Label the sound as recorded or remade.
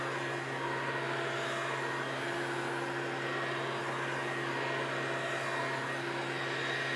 recorded